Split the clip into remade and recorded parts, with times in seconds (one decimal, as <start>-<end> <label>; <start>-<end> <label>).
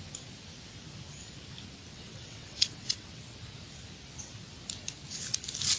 0.0-1.9 recorded; 1.9-3.2 remade; 3.2-5.8 recorded